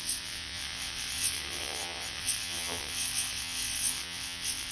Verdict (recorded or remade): remade